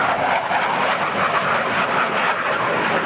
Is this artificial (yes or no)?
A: no